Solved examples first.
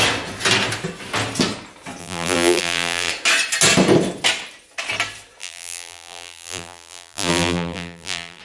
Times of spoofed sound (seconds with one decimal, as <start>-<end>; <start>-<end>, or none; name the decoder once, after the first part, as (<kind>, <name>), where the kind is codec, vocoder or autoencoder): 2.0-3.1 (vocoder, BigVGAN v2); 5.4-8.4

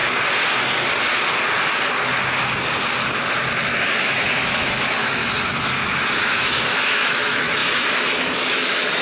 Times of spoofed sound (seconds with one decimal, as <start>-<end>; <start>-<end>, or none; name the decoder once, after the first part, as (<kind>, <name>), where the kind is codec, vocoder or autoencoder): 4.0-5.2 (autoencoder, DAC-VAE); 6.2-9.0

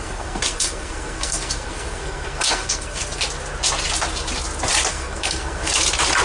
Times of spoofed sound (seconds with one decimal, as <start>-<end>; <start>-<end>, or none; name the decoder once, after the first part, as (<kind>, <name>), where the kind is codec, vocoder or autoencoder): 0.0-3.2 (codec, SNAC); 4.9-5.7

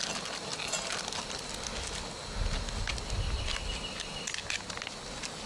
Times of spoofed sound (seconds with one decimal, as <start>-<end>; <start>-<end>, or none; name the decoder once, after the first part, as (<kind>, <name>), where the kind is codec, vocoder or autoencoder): none

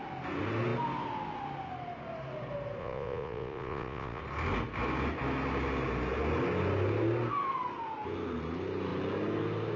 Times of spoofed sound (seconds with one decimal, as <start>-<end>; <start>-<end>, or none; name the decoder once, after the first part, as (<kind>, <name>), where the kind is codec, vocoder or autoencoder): 2.8-4.2 (vocoder, Vocos)

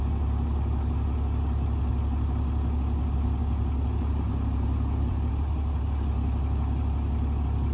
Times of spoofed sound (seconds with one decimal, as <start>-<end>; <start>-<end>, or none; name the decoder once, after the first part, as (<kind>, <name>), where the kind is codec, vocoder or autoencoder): 4.1-5.3 (vocoder, BigVGAN v2)

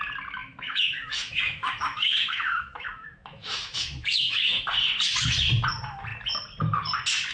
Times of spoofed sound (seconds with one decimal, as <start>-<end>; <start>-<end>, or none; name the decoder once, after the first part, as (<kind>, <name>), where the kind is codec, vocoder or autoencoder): 0.4-4.6 (autoencoder, DAC-VAE)

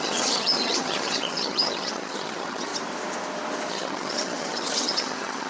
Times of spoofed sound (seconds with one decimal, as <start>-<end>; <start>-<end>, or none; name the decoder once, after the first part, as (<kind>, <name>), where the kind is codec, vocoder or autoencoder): 0.0-2.7 (vocoder, HiFi-GAN); 3.7-5.5